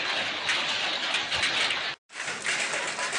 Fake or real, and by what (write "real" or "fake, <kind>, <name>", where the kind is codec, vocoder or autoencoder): real